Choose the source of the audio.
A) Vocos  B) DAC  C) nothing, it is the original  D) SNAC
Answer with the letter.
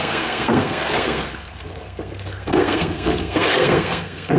D